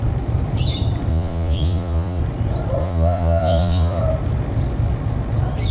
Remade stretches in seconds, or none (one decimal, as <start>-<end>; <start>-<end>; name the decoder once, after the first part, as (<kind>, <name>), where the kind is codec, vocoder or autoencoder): 1.1-2.2 (vocoder, Vocos); 2.8-4.0